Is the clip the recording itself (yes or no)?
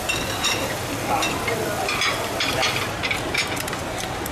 yes